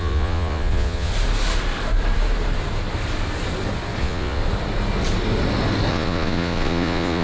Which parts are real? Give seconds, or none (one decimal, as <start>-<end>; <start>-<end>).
1.1-4.0; 4.4-5.9